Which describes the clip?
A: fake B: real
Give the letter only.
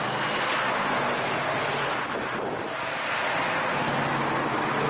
B